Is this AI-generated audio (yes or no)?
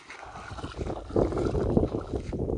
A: no